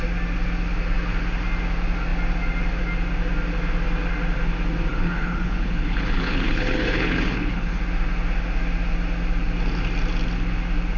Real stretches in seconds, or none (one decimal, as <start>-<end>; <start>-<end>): 0.0-4.9; 7.8-11.0